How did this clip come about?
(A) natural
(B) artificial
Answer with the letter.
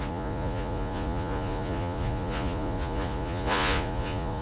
B